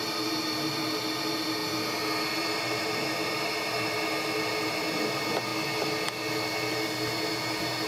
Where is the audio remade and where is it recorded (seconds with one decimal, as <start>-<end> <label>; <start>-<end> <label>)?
0.0-7.9 recorded

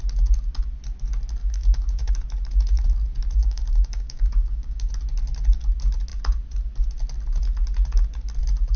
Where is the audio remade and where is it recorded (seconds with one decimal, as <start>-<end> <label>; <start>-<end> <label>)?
0.0-1.4 recorded; 1.4-2.1 remade; 2.1-3.4 recorded; 3.4-4.9 remade; 4.9-8.8 recorded

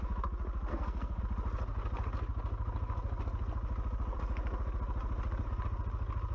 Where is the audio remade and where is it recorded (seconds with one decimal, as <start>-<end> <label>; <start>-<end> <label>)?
0.0-0.7 recorded; 0.7-1.2 remade; 1.2-6.3 recorded

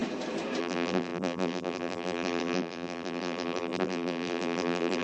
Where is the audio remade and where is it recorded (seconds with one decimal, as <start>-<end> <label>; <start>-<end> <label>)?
0.0-0.6 recorded; 0.6-5.0 remade

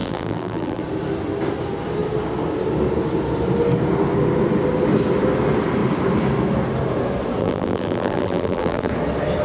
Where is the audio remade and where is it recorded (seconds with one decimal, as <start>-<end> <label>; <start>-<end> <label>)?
0.0-0.8 remade; 0.8-7.4 recorded; 7.4-8.9 remade; 8.9-9.4 recorded

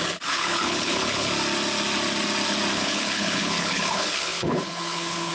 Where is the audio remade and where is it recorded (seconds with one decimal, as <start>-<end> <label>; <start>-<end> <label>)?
0.0-1.3 remade; 1.3-2.7 recorded; 2.7-5.3 remade

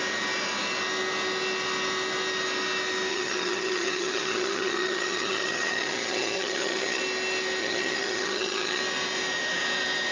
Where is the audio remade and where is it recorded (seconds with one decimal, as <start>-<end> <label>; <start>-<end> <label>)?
0.0-3.1 recorded; 3.1-7.0 remade; 7.0-7.6 recorded; 7.6-8.8 remade; 8.8-10.1 recorded

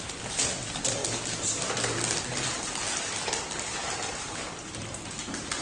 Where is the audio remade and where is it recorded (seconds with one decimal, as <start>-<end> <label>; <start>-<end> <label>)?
0.0-5.6 recorded